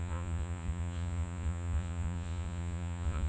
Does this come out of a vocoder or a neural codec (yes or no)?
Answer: yes